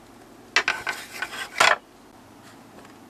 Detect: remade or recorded recorded